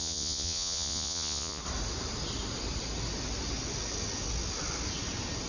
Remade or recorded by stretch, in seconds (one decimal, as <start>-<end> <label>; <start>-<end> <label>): 0.0-1.6 remade; 1.6-5.5 recorded